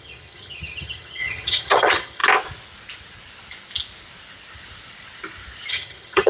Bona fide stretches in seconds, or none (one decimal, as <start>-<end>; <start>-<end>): 2.2-5.7